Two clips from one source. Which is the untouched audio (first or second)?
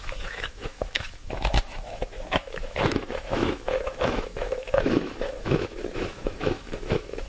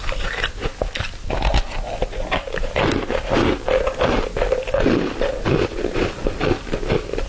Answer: second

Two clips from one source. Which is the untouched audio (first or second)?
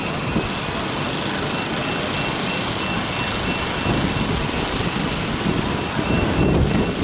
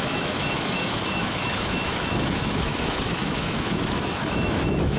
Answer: first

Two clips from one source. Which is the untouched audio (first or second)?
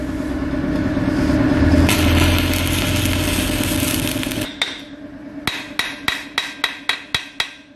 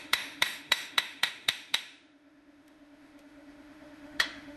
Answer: first